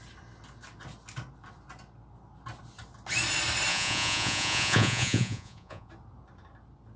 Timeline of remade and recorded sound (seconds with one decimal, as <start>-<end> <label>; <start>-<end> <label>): 0.0-3.7 recorded; 3.7-5.9 remade; 5.9-7.0 recorded